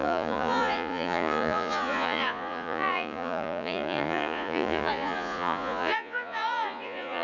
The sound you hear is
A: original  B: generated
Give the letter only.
B